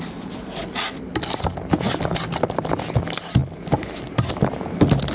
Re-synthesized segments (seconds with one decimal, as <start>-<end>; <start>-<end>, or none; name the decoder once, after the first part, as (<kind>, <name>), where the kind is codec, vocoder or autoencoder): none